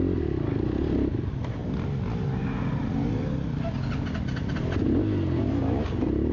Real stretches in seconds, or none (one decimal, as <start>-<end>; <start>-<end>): 0.0-6.3